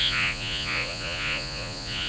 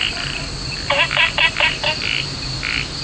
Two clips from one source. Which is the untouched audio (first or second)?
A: second